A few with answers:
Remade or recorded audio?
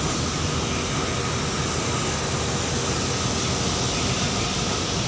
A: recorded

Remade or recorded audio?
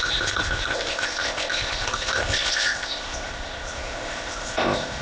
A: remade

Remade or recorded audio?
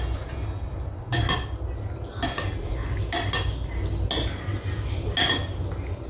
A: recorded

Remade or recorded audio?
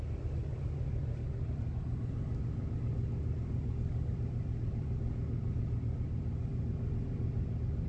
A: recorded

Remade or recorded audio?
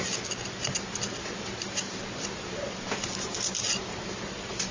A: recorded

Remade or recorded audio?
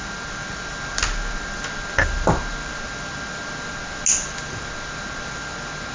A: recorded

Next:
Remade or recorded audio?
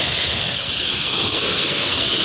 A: remade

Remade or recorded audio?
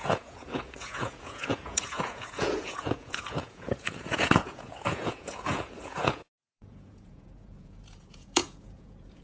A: remade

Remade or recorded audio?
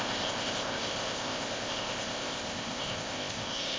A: remade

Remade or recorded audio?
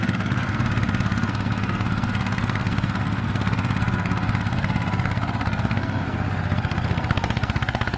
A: remade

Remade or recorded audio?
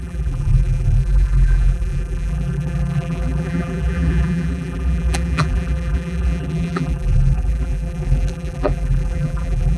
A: remade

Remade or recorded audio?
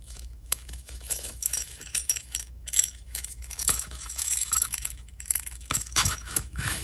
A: remade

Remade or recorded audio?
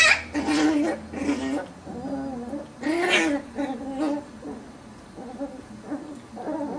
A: recorded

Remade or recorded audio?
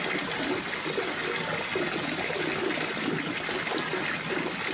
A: recorded